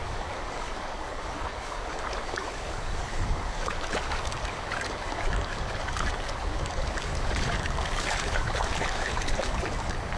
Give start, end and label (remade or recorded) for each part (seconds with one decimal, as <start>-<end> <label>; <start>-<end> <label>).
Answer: 0.0-10.2 remade